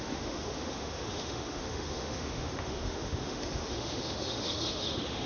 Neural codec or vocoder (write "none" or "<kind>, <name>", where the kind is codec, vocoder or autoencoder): autoencoder, DAC-VAE